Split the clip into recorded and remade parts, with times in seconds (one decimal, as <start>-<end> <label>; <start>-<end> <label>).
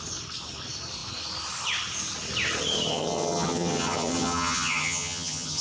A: 0.0-2.9 recorded; 2.9-5.6 remade